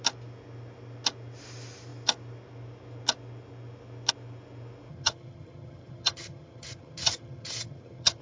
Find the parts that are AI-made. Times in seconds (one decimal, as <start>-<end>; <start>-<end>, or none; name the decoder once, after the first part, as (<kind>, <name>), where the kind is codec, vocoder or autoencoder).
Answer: 4.9-8.2 (vocoder, HiFi-GAN)